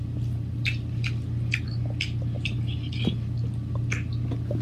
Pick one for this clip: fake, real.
real